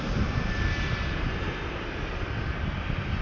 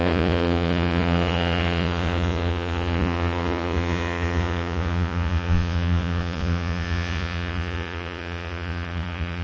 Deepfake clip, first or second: second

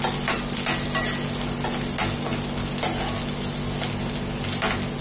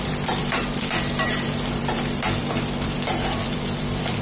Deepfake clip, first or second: second